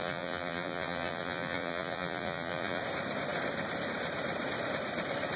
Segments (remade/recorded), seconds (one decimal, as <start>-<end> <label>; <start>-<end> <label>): 0.0-2.8 remade; 2.8-5.4 recorded